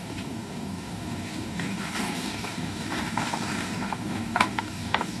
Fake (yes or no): yes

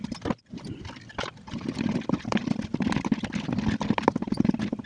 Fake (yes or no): no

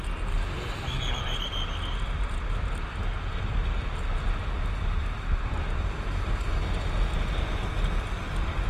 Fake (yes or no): no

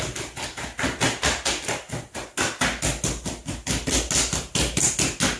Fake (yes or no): no